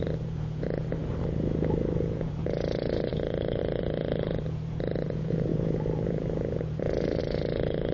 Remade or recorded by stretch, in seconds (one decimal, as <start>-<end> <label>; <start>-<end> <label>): 0.0-7.9 remade